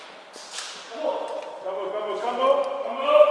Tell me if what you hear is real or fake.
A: real